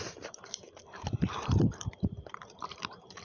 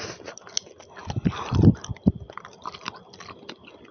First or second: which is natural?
second